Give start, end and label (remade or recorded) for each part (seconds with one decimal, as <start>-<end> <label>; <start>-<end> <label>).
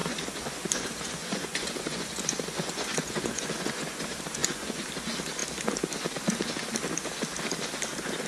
0.0-4.0 remade; 4.0-4.4 recorded; 4.4-4.9 remade; 4.9-8.3 recorded